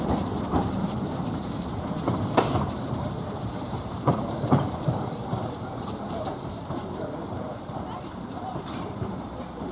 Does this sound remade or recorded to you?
remade